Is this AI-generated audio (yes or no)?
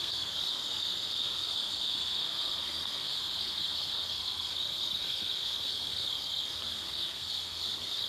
yes